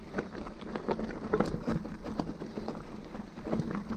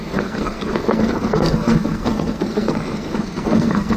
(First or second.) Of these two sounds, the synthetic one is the second